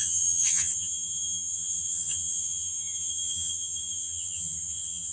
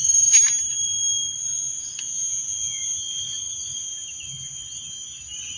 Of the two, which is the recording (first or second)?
second